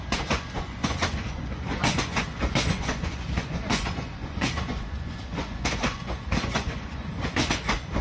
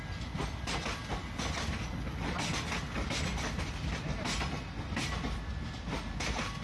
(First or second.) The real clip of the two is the second